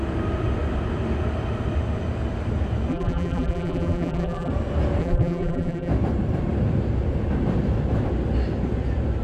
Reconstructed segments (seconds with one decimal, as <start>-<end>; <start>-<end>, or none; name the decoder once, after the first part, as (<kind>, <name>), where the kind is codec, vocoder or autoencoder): 2.9-4.5 (vocoder, BigVGAN v2); 5.0-5.9